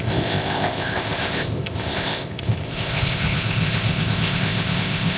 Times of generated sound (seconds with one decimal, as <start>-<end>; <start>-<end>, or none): 0.0-5.2